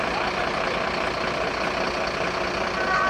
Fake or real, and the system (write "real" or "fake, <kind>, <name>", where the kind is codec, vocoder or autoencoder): real